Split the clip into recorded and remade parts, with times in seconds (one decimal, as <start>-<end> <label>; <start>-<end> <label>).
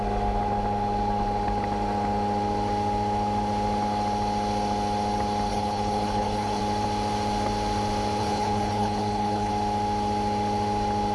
0.0-5.5 recorded; 5.5-6.6 remade; 6.6-8.2 recorded; 8.2-9.5 remade; 9.5-11.1 recorded